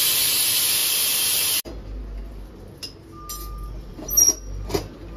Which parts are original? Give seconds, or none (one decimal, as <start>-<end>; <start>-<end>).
0.0-5.2